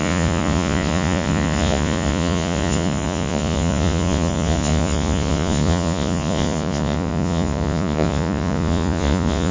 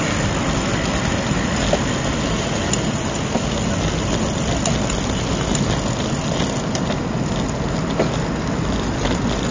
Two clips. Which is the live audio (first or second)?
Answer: second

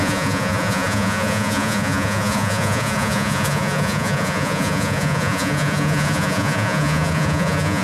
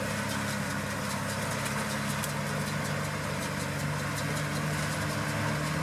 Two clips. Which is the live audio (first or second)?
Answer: second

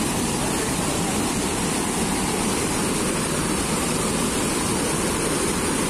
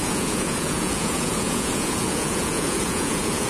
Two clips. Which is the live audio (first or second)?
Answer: first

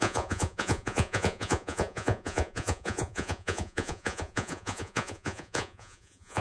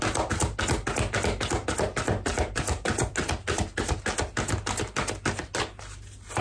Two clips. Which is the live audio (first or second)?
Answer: second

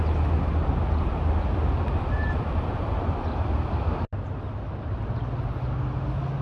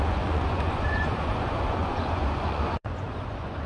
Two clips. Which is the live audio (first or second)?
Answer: first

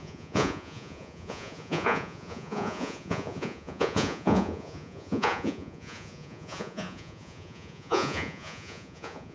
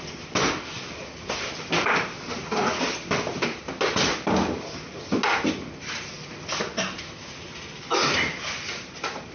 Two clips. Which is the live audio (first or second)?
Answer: second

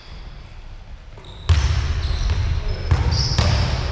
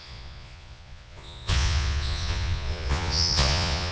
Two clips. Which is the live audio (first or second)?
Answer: first